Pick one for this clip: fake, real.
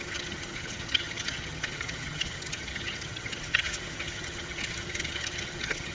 fake